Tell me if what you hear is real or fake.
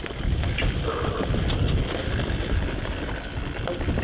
real